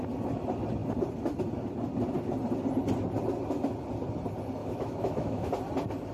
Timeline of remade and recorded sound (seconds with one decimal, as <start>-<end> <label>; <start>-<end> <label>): 0.0-4.6 recorded; 4.6-5.5 remade; 5.5-6.1 recorded